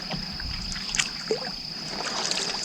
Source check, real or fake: real